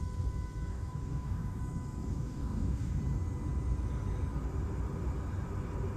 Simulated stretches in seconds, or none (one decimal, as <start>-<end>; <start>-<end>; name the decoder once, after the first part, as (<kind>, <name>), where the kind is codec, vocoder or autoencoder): 0.7-1.6 (codec, DAC); 2.1-3.0